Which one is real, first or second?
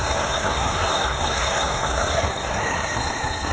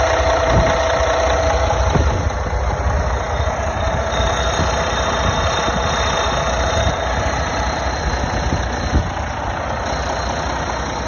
second